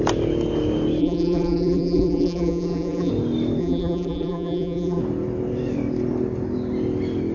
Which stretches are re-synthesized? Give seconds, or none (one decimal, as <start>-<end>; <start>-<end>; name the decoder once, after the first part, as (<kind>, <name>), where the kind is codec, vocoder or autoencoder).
1.0-3.1 (vocoder, BigVGAN v2); 3.6-5.0